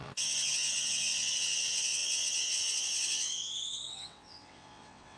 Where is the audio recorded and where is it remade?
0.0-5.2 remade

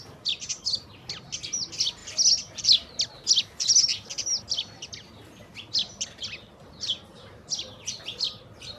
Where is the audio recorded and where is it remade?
0.0-8.8 recorded

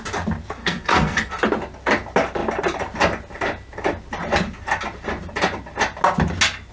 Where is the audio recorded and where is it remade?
0.0-0.6 recorded; 0.6-1.3 remade; 1.3-6.7 recorded

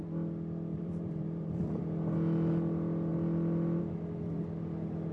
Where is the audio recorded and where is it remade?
0.0-0.7 recorded; 0.7-1.8 remade; 1.8-5.1 recorded

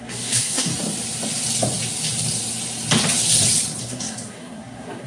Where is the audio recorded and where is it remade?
0.0-0.7 remade; 0.7-3.8 recorded; 3.8-5.1 remade